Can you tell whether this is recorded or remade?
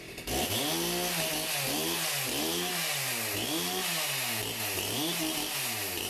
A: recorded